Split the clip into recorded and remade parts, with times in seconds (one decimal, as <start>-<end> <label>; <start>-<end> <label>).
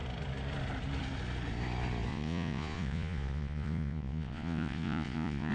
0.0-2.1 recorded; 2.1-5.5 remade